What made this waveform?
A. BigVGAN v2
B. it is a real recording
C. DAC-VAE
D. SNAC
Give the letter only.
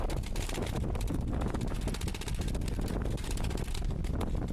B